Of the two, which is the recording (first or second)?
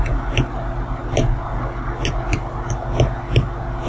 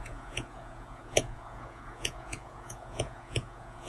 first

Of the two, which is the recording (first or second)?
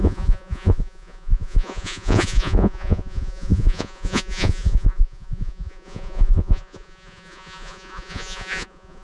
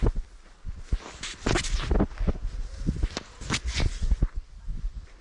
second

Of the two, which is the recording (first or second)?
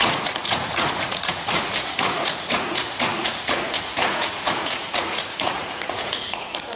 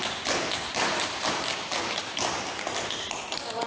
second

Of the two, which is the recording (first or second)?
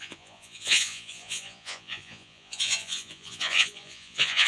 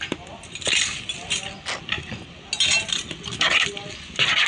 second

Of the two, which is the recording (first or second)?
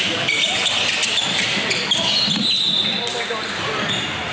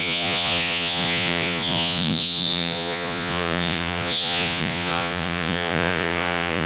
first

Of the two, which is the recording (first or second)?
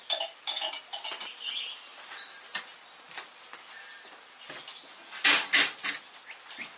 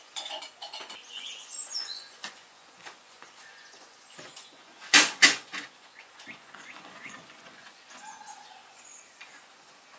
first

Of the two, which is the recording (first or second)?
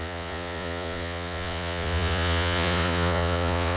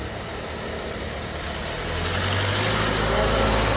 second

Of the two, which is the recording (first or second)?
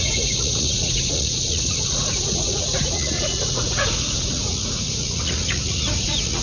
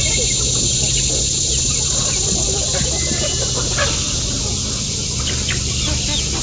second